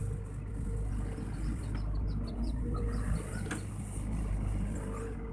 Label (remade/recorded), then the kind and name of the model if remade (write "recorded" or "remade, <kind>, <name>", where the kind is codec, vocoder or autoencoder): recorded